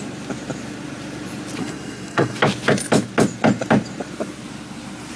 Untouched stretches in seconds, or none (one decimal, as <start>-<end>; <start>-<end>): 0.0-1.6; 2.4-5.2